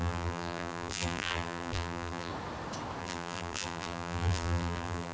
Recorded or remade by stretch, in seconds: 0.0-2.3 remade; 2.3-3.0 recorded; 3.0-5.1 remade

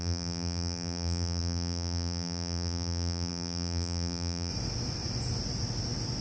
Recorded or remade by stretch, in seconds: 0.0-4.5 remade; 4.5-6.2 recorded

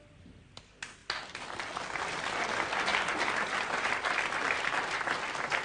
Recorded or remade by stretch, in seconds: 0.0-5.6 recorded

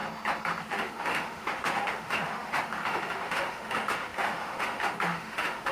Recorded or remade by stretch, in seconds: 0.0-0.6 recorded; 0.6-5.7 remade

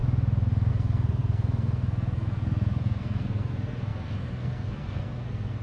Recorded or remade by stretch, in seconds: 0.0-0.7 recorded; 0.7-5.6 remade

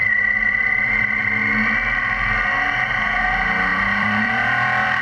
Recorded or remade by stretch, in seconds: 0.0-1.4 remade; 1.4-3.2 recorded; 3.2-5.0 remade